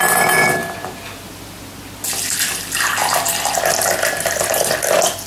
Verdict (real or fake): real